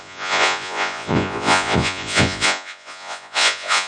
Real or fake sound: fake